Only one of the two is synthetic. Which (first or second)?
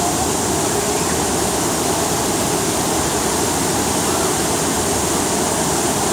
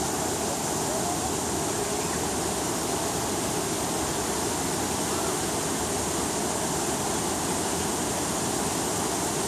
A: first